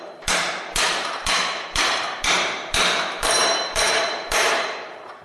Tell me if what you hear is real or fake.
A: fake